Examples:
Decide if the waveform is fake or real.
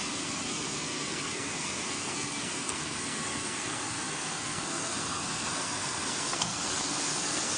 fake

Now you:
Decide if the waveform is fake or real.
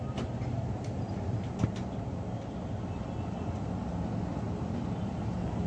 real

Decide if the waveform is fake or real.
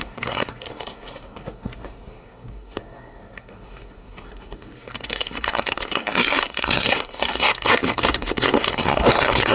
fake